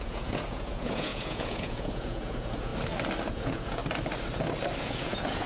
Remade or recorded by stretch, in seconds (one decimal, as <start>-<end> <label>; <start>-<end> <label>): 0.0-2.7 remade; 2.7-3.3 recorded; 3.3-3.8 remade; 3.8-4.8 recorded; 4.8-5.5 remade